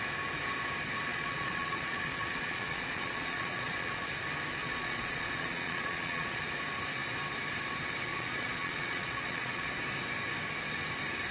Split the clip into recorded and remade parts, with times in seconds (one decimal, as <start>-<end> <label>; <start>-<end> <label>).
0.0-1.1 recorded; 1.1-4.1 remade; 4.1-4.6 recorded; 4.6-6.4 remade; 6.4-8.1 recorded; 8.1-9.7 remade; 9.7-11.3 recorded